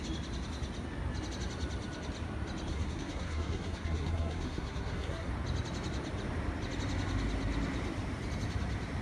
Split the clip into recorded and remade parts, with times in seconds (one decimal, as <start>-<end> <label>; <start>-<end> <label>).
0.0-2.7 recorded; 2.7-5.3 remade; 5.3-9.0 recorded